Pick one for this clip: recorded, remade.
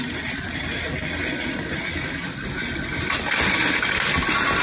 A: recorded